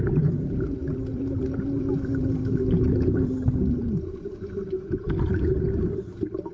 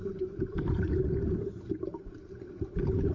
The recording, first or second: first